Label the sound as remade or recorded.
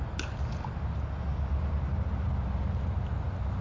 recorded